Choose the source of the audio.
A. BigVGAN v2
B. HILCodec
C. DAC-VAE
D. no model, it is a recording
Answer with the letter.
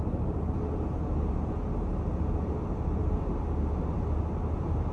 D